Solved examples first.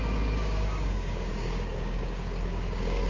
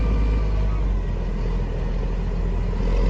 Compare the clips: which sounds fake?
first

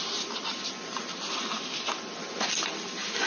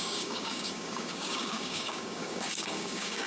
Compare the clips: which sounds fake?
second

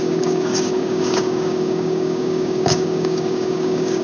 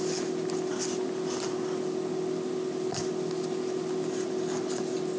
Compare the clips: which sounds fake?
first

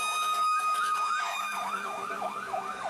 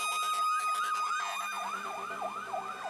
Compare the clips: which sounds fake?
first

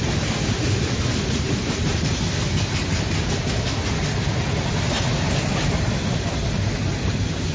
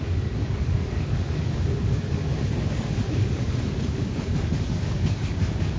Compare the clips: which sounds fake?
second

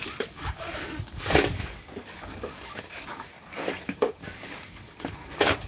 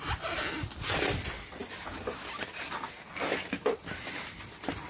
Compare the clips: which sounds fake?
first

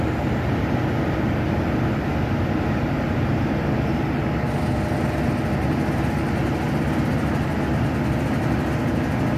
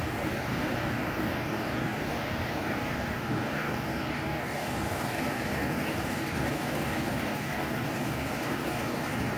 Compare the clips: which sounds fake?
second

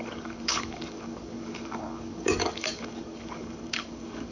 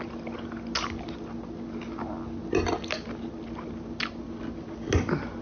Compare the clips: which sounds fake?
first